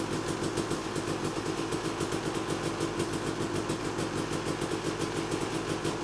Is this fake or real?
real